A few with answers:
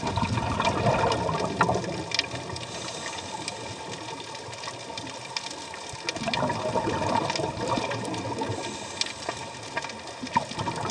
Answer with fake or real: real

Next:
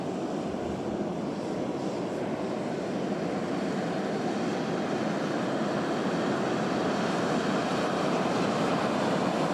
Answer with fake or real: real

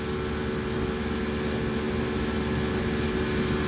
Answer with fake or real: real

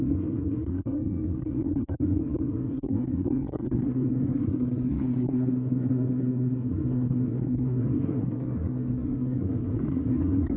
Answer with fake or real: fake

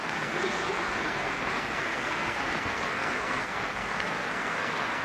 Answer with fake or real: fake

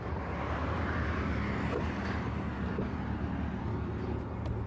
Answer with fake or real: real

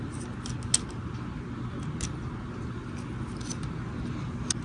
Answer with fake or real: real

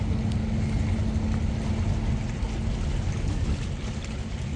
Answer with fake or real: real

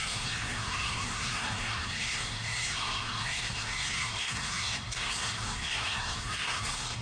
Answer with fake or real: fake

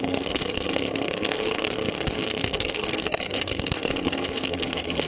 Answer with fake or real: fake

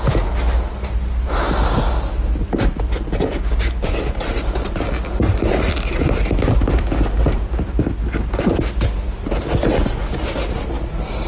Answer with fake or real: real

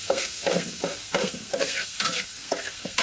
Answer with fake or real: fake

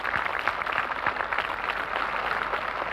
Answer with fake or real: real